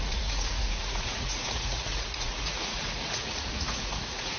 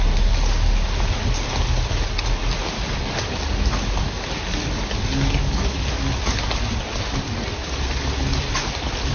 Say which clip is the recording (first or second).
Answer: second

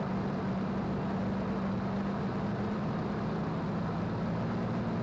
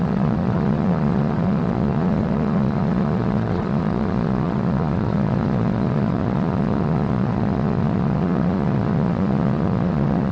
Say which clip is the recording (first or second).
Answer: first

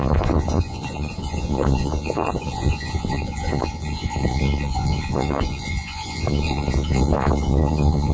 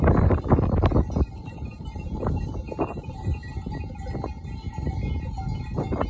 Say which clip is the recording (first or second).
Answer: second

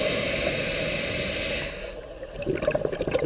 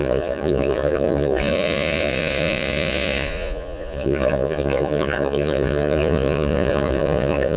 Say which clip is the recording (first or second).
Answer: first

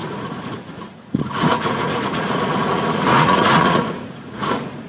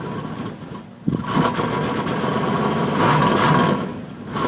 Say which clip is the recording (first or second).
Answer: second